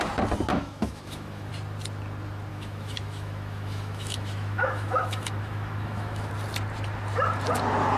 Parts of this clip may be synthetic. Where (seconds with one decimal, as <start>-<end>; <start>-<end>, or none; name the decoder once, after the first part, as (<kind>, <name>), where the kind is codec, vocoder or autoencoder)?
0.5-1.5 (autoencoder, DAC-VAE); 2.5-6.3